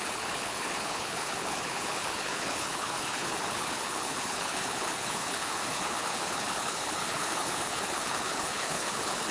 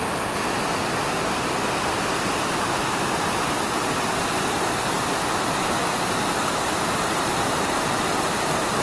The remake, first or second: first